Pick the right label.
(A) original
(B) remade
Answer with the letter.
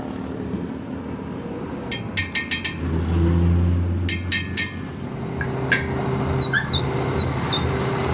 A